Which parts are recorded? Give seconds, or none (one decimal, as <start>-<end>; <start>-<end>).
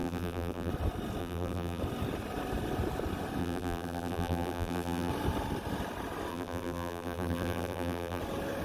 0.7-1.2; 1.8-3.4; 5.1-6.3; 8.2-8.6